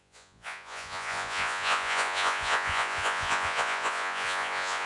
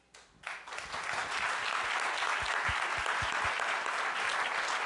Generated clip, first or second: first